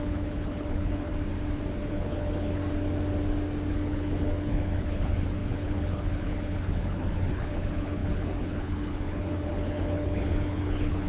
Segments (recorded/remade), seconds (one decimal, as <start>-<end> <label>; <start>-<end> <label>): 0.0-1.1 remade; 1.1-1.9 recorded; 1.9-2.6 remade; 2.6-3.7 recorded; 3.7-11.1 remade